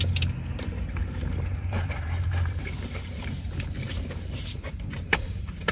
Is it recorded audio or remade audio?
remade